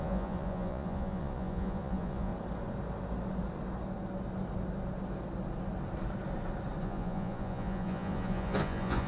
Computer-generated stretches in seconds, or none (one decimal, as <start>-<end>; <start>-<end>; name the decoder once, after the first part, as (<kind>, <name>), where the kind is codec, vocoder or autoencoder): 0.0-2.3 (vocoder, Vocos); 6.8-9.1